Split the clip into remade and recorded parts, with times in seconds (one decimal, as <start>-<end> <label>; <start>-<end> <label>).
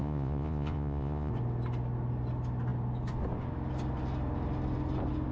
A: 0.0-1.3 remade; 1.3-5.3 recorded